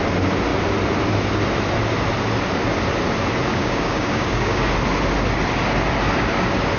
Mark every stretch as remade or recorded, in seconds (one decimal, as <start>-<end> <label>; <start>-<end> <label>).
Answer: 0.0-3.5 recorded; 3.5-4.7 remade; 4.7-6.8 recorded